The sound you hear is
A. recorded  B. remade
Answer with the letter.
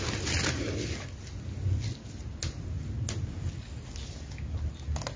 A